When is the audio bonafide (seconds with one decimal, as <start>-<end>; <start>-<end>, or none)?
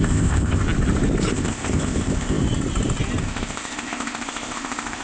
0.6-1.3; 2.4-3.2